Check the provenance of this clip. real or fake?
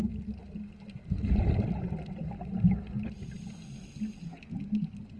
real